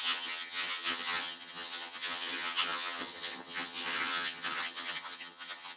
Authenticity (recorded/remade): remade